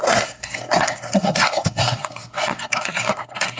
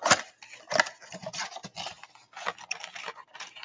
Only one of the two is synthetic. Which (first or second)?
first